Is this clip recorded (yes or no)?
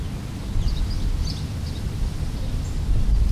yes